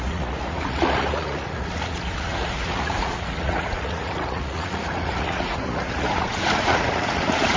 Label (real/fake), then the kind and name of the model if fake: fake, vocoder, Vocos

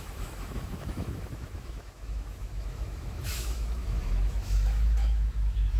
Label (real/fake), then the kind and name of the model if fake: fake, autoencoder, DAC-VAE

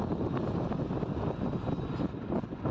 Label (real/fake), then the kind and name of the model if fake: real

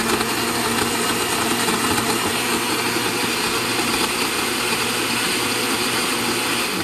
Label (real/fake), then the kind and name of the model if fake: real